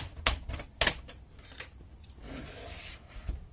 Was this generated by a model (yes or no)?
no